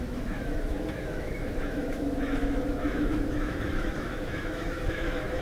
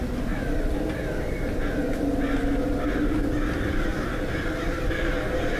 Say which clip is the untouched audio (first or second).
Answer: second